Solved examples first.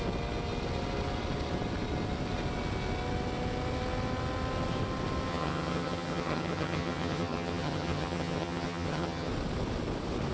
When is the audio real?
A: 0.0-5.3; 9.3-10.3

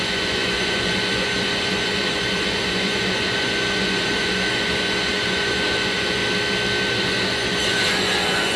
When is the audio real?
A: 6.2-6.9